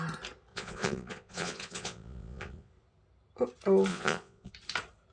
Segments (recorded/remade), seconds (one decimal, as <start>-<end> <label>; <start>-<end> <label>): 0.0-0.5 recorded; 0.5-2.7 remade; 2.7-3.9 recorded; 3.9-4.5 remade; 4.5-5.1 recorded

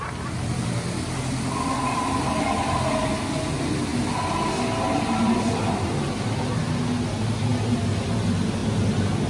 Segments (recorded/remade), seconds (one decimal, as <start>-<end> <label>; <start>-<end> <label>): 0.0-9.3 recorded

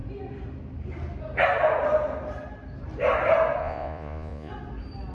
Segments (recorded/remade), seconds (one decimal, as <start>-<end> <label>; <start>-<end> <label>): 0.0-3.6 recorded; 3.6-4.5 remade; 4.5-5.1 recorded

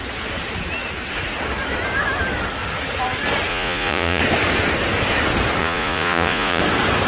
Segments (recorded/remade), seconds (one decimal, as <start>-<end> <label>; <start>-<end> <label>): 0.0-3.5 recorded; 3.5-4.2 remade; 4.2-5.6 recorded; 5.6-6.6 remade; 6.6-7.1 recorded

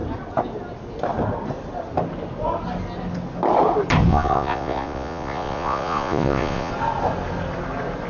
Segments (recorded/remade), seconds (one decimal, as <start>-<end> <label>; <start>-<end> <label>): 0.0-4.1 recorded; 4.1-6.7 remade; 6.7-8.1 recorded